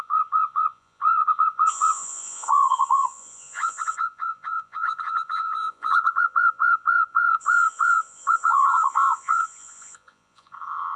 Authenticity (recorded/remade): remade